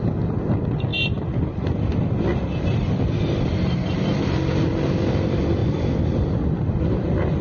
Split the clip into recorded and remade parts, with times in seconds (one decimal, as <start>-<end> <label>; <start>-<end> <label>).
0.0-0.9 recorded; 0.9-4.2 remade; 4.2-5.6 recorded; 5.6-6.8 remade; 6.8-7.4 recorded